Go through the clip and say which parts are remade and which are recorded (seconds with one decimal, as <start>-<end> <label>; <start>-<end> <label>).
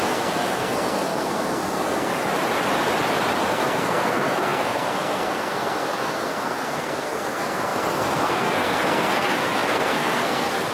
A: 0.0-2.1 remade; 2.1-3.5 recorded; 3.5-10.7 remade